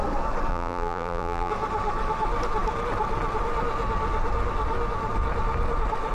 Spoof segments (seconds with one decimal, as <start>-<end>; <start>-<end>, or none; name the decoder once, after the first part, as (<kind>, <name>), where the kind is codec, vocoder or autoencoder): 0.5-1.5 (vocoder, BigVGAN v2)